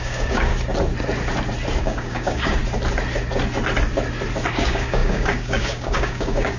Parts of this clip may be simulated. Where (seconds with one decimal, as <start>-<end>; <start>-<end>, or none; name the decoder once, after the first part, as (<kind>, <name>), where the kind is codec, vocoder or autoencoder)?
0.0-0.5 (codec, DAC); 1.8-2.6; 4.5-6.6